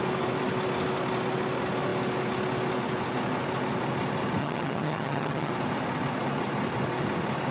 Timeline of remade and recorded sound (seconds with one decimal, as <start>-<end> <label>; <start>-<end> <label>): 0.0-4.4 recorded; 4.4-5.5 remade; 5.5-7.5 recorded